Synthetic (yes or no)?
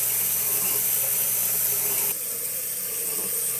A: no